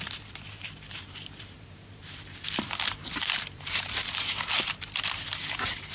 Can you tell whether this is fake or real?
fake